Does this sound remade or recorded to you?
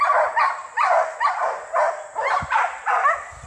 recorded